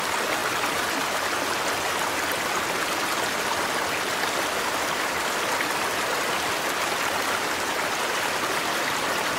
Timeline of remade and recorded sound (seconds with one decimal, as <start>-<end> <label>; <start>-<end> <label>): 0.0-9.4 recorded